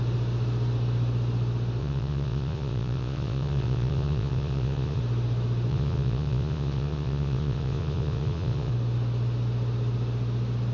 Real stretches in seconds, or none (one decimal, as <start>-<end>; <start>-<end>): 0.0-1.8; 5.0-5.7; 8.7-10.7